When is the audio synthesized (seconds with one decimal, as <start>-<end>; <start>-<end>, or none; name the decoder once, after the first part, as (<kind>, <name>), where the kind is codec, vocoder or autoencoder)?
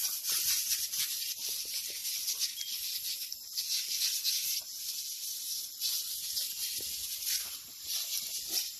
0.7-2.0 (vocoder, BigVGAN v2); 7.3-8.8